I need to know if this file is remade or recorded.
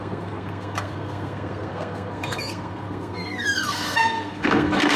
remade